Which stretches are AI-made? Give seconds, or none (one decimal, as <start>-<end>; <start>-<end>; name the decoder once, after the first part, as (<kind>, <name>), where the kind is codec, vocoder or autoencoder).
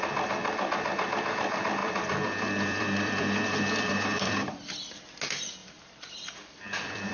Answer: 1.8-5.1 (vocoder, BigVGAN v2); 5.6-7.1